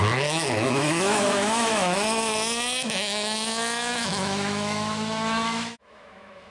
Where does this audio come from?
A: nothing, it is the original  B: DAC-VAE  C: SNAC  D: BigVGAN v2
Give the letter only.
B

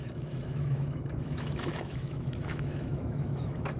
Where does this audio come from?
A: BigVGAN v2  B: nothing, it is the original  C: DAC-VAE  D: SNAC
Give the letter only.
C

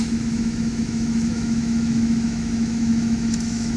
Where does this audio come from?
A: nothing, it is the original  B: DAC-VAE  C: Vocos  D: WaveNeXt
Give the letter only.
B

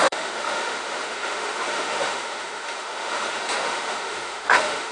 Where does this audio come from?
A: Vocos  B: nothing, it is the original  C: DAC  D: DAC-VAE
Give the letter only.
D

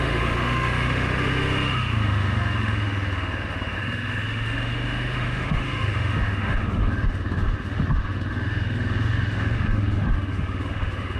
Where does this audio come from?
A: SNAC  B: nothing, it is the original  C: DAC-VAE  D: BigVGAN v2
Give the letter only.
C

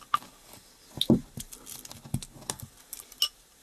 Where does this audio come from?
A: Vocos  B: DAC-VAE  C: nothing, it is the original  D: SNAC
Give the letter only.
C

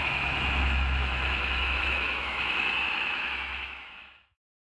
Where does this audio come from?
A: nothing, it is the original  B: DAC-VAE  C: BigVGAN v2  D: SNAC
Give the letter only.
B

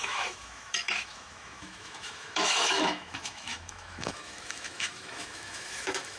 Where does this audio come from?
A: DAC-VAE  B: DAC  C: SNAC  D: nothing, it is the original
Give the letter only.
A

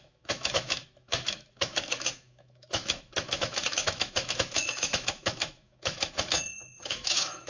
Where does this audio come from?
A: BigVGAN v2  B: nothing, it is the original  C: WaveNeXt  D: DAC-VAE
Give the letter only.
D